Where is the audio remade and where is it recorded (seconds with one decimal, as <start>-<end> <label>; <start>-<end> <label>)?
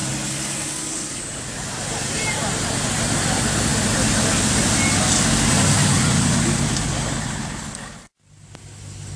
0.0-9.2 recorded